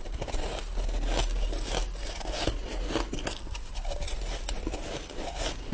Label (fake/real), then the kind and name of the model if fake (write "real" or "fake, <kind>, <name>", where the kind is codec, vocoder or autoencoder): real